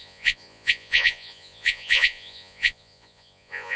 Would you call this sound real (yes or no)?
no